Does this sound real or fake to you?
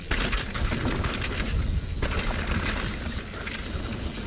real